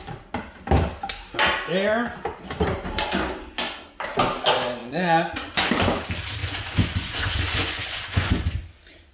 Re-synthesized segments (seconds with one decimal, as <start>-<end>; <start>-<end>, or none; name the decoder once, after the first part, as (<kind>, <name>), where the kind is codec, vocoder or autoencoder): 4.8-5.7 (vocoder, Vocos); 6.4-8.7